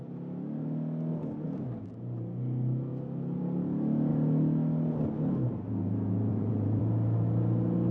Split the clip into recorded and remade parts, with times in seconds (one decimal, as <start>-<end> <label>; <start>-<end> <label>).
0.0-6.3 recorded; 6.3-6.8 remade; 6.8-7.9 recorded